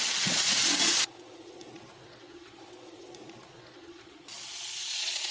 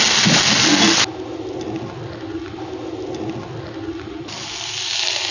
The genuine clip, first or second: second